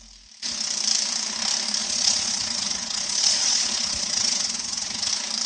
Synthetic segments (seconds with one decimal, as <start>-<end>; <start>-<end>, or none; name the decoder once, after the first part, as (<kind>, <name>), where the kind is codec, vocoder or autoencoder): 1.8-5.1 (vocoder, Vocos)